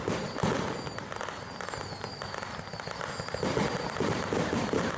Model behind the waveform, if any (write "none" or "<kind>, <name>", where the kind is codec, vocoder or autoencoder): none